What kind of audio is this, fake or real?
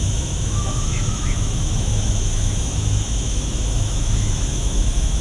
fake